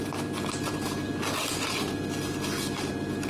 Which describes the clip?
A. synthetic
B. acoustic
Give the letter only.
B